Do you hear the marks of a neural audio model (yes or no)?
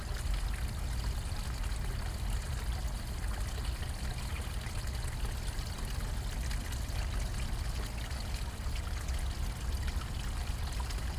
no